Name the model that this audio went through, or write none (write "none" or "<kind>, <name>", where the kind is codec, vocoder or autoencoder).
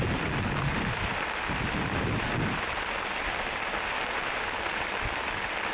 none